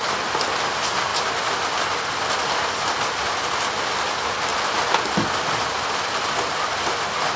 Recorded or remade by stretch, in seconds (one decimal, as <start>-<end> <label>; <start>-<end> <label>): 0.0-7.4 recorded